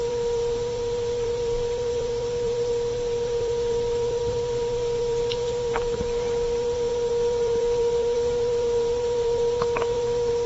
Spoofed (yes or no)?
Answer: yes